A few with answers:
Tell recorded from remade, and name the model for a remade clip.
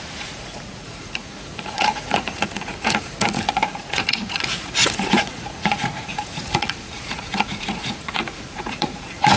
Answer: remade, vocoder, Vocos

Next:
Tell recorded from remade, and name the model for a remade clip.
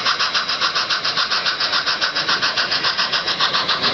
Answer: remade, vocoder, Vocos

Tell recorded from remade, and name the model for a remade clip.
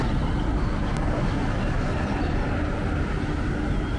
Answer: recorded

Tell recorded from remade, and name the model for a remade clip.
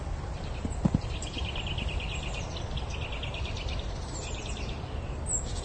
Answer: recorded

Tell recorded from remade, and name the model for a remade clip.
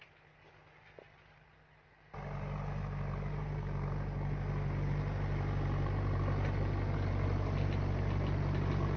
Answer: recorded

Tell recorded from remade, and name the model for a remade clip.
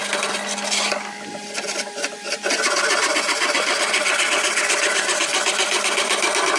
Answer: recorded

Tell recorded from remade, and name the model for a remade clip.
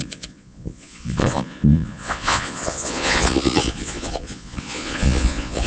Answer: remade, vocoder, Vocos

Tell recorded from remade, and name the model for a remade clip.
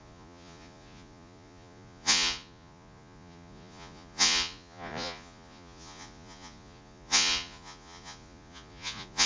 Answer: remade, vocoder, Vocos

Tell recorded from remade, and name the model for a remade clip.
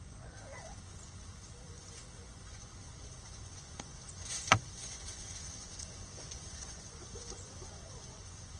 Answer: remade, vocoder, Vocos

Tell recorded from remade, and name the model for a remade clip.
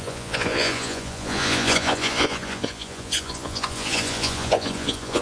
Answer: remade, vocoder, Vocos